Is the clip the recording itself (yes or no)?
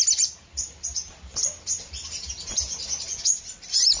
yes